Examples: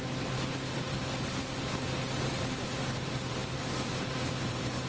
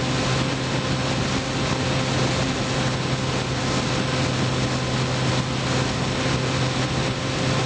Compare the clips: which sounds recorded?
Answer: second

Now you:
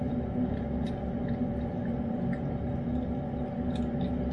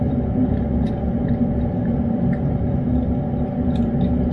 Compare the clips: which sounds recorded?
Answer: first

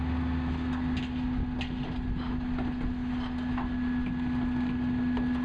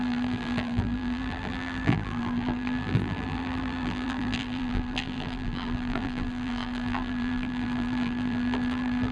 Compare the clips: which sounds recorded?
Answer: first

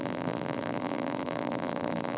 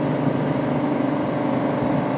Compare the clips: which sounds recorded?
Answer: second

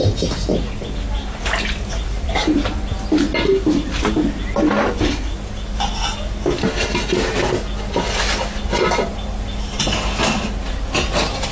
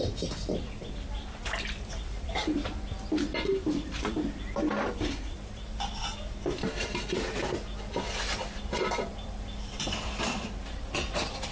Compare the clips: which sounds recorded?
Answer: first